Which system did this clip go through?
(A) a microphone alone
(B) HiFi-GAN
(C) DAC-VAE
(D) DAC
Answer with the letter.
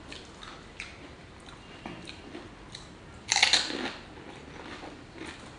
A